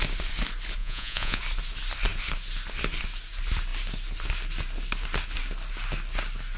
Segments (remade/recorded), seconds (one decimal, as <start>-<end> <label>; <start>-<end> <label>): 0.0-0.8 recorded; 0.8-1.4 remade; 1.4-6.6 recorded